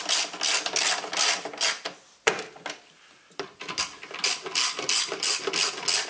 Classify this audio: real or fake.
real